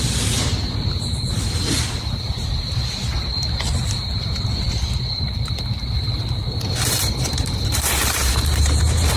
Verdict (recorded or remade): remade